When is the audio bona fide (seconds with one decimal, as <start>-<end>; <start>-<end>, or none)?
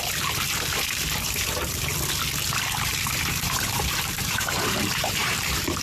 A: 1.9-2.9